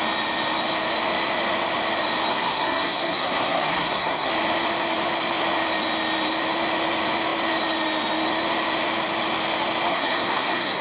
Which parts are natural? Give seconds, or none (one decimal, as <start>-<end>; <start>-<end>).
0.0-2.3; 4.3-9.9